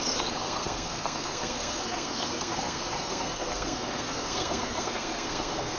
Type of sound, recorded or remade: remade